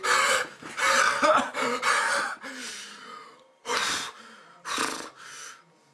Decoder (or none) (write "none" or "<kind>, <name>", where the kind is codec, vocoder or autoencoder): none